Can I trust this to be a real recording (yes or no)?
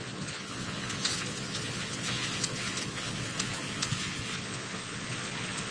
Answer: no